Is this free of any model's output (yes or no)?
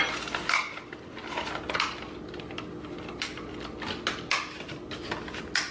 yes